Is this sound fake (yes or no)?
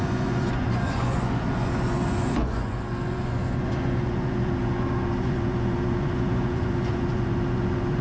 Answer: yes